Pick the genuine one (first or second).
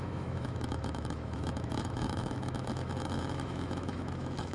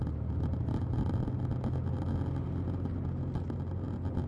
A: second